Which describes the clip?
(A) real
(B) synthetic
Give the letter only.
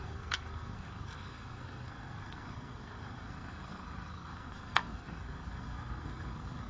B